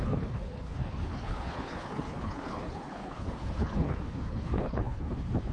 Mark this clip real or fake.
fake